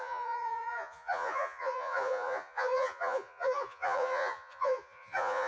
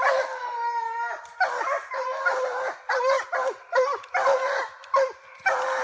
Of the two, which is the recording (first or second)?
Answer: second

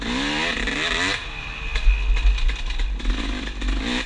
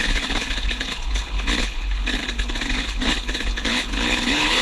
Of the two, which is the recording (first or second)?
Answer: first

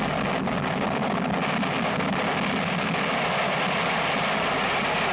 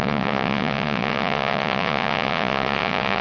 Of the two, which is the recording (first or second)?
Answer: first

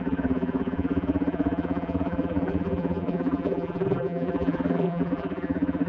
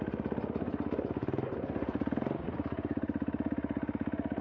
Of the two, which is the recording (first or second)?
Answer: second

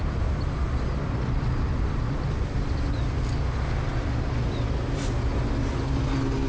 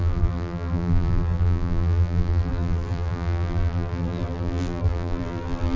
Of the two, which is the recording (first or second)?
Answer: first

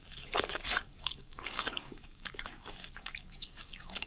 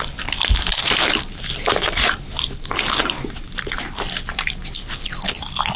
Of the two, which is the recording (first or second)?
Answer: second